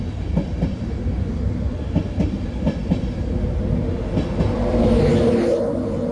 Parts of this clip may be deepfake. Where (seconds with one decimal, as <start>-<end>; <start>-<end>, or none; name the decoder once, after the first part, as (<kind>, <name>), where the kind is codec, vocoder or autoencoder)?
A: none